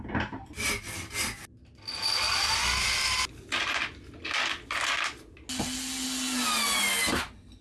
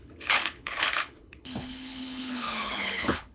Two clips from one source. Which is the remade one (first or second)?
second